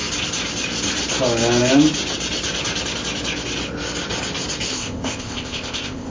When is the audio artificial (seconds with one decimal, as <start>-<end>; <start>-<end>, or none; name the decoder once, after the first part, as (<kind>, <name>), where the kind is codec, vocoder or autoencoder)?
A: 4.7-6.1 (codec, ZipCodec)